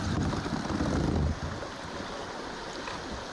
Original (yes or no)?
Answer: yes